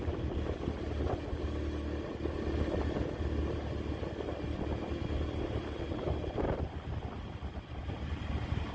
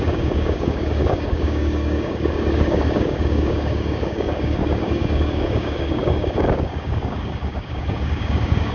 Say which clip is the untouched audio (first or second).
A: first